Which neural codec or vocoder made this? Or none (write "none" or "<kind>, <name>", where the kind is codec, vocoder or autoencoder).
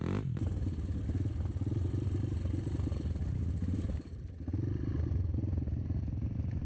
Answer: none